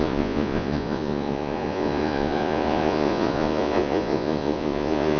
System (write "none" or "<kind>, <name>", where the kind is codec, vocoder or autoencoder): vocoder, Vocos